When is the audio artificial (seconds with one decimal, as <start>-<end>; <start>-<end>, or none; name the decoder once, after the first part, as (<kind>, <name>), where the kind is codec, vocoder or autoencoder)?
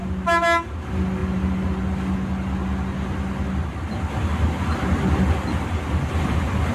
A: none